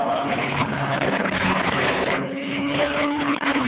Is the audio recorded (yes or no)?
no